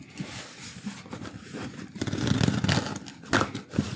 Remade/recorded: recorded